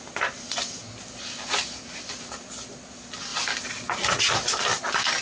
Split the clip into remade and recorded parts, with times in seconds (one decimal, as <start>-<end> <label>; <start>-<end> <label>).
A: 0.0-5.2 recorded